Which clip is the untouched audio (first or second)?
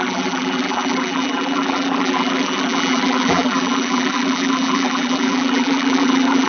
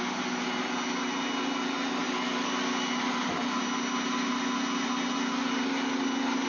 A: second